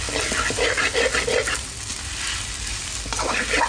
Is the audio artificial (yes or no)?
no